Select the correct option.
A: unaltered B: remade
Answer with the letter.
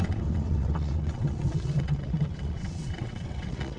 B